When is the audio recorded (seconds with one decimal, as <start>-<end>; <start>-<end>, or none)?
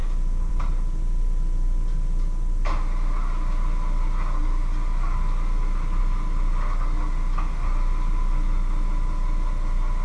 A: 0.0-10.0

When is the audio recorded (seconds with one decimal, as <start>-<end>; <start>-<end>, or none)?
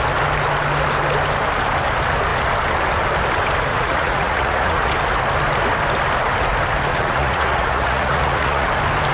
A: 0.0-3.7; 4.9-6.9; 8.7-9.1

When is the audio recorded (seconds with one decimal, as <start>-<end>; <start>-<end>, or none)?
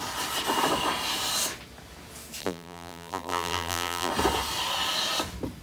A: 0.0-2.4; 4.1-5.6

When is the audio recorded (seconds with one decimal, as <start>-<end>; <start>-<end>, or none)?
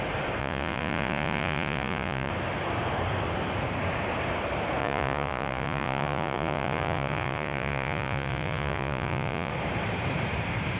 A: 0.0-0.4; 2.3-4.8; 9.5-10.8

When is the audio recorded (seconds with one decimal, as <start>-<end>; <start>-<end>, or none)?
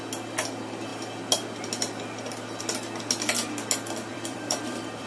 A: 0.0-4.1